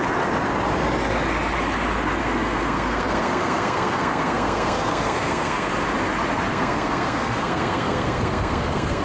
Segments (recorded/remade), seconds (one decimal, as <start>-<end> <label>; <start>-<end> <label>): 0.0-2.2 recorded; 2.2-5.7 remade; 5.7-6.5 recorded; 6.5-9.0 remade